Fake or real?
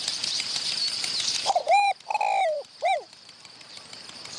fake